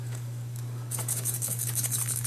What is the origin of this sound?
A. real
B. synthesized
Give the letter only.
B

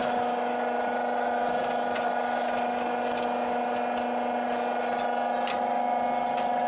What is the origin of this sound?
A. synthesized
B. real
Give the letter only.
B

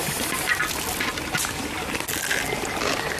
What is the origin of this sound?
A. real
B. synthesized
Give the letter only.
A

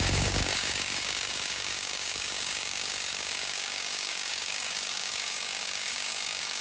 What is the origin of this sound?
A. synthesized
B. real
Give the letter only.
A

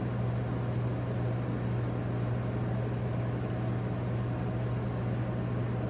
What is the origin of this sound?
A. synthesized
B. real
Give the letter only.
B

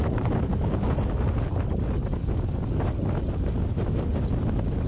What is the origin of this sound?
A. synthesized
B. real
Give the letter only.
B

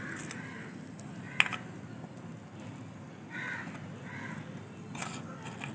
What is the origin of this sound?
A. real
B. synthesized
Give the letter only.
A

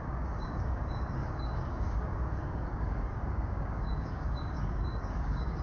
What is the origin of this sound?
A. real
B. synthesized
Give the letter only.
B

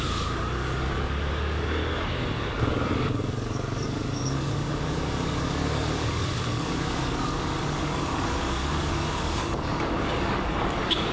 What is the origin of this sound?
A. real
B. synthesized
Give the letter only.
B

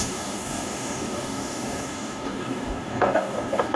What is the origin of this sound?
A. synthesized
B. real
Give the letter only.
A